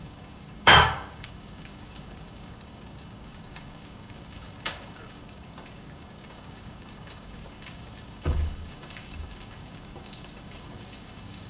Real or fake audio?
fake